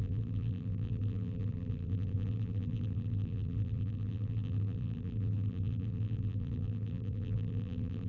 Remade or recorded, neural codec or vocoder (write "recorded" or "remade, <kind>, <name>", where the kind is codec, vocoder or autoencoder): remade, vocoder, BigVGAN v2